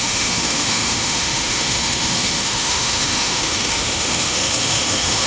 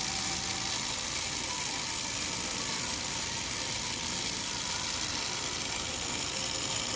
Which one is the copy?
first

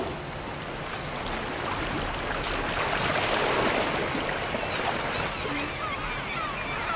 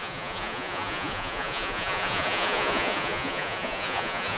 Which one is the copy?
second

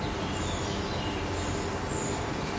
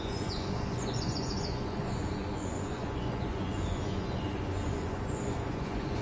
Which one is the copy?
second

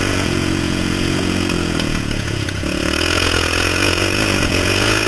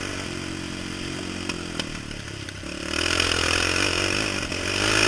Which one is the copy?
first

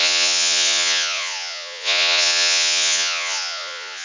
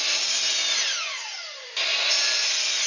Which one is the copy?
first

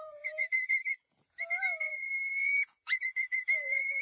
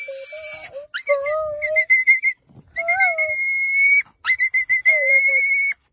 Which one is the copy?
first